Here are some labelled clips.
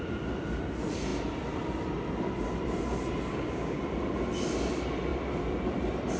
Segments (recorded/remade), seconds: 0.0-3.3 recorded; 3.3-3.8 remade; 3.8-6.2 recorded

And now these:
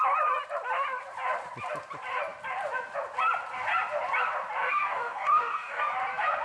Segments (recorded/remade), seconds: 0.0-4.6 recorded; 4.6-5.8 remade; 5.8-6.4 recorded